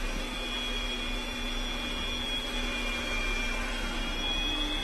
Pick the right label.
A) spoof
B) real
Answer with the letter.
B